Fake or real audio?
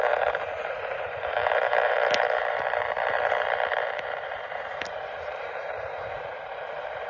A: fake